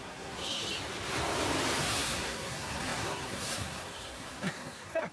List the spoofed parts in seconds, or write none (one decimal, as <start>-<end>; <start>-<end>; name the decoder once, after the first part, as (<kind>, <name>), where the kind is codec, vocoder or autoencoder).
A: 0.0-0.6 (codec, SNAC); 1.8-5.1

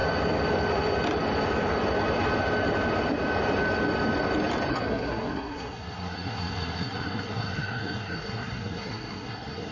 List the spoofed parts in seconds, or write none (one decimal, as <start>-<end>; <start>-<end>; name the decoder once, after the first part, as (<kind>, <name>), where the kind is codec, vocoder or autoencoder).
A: 4.7-9.7 (codec, SNAC)

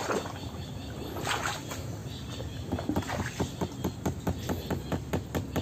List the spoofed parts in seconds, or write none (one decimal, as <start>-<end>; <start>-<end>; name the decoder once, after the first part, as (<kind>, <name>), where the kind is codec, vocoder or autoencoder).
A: none

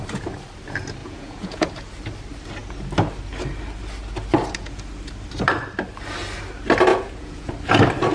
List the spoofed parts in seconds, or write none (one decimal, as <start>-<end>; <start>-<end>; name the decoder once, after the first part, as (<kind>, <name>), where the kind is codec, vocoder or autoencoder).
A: 1.0-1.7 (vocoder, Vocos); 6.9-7.5

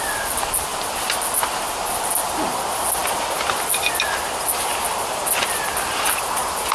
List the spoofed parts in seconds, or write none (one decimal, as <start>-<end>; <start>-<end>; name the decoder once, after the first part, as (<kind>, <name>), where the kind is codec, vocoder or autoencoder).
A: none

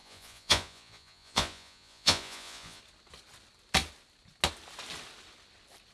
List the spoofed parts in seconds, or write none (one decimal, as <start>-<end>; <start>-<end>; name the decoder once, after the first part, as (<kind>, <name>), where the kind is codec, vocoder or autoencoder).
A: 0.0-2.8 (vocoder, Vocos)